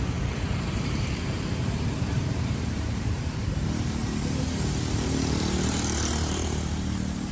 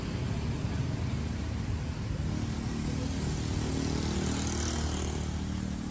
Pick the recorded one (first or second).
second